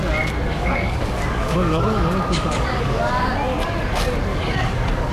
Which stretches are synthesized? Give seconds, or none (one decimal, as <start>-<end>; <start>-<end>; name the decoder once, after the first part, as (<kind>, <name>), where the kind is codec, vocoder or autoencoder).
0.5-3.3 (codec, DAC); 4.3-5.1